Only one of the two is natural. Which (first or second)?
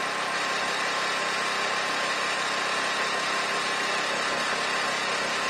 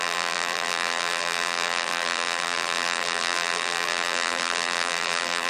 first